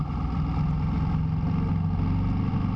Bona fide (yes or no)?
yes